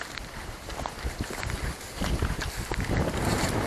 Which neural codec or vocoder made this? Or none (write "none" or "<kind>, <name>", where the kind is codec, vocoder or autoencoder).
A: none